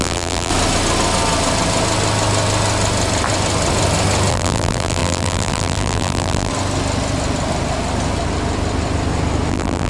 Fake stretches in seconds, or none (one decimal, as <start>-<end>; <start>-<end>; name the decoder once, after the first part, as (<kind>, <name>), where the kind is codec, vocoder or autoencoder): 0.0-0.5 (vocoder, BigVGAN v2); 4.3-6.5; 9.5-9.9